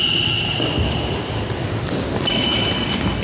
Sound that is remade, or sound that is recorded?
recorded